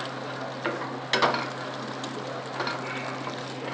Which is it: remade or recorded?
recorded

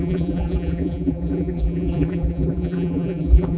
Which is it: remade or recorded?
remade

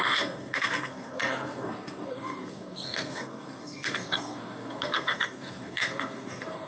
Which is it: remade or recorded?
remade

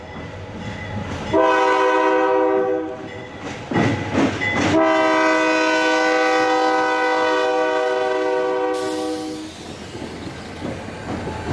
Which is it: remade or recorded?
recorded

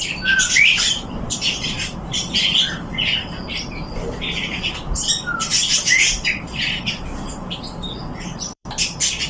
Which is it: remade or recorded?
remade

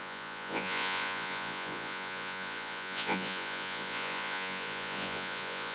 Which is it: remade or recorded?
remade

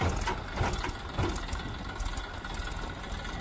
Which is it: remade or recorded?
recorded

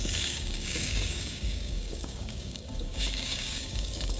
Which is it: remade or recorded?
remade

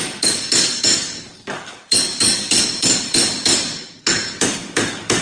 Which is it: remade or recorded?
remade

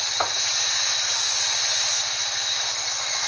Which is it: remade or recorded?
recorded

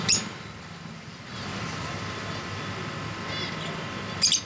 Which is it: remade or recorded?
recorded